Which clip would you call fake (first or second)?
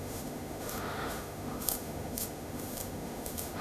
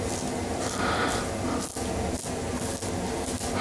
first